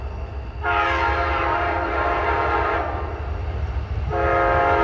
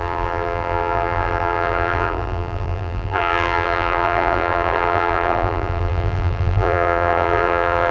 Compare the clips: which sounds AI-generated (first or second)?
second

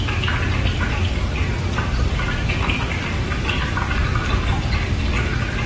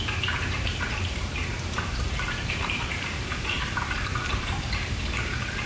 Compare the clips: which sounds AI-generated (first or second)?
second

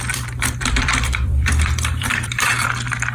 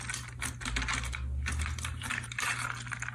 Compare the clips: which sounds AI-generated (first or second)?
first